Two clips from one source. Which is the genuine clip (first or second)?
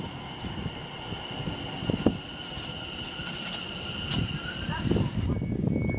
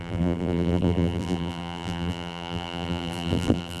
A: first